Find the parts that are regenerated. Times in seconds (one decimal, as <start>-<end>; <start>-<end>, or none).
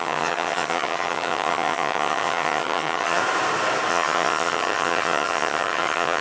0.0-3.2; 3.9-6.2